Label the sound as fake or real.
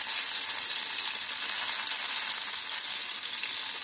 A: real